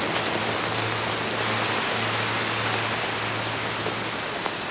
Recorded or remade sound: recorded